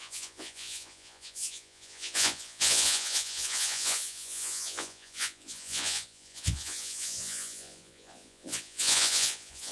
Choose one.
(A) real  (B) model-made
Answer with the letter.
B